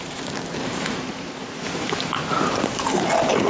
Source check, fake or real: fake